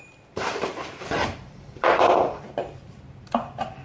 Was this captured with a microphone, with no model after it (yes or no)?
no